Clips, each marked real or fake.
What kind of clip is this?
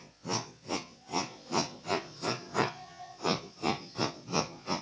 fake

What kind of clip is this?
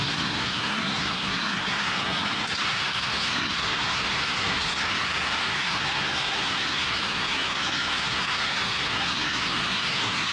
fake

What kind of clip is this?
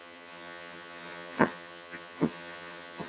fake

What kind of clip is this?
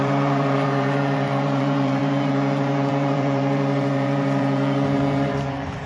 fake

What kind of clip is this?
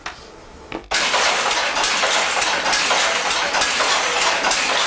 real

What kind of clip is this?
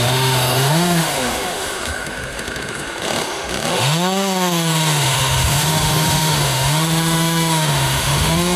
fake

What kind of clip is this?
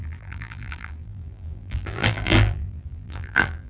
fake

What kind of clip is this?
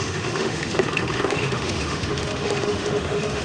fake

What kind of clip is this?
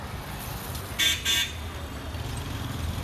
real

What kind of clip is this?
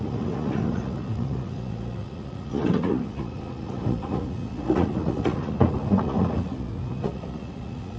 fake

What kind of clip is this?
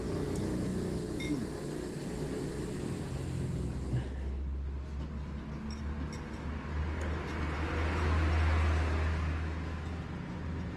real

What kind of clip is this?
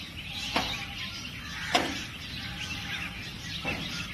real